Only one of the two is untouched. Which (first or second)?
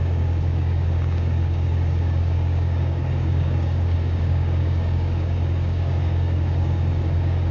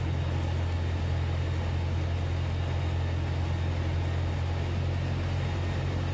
second